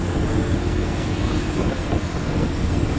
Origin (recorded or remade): remade